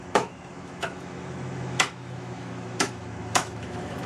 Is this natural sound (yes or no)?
no